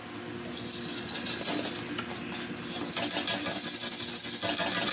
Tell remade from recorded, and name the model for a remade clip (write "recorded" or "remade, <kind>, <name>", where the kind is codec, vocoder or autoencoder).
recorded